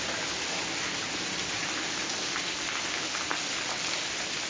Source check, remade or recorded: recorded